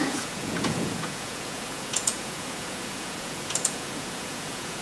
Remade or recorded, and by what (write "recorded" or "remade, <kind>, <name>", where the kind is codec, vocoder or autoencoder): remade, vocoder, Vocos